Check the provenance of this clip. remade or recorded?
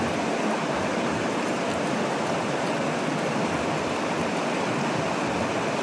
recorded